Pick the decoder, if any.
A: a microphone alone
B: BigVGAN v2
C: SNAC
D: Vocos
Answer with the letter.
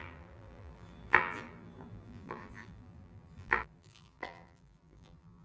B